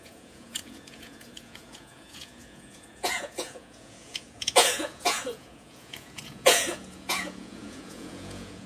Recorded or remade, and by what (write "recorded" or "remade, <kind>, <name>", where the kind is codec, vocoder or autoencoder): remade, vocoder, Vocos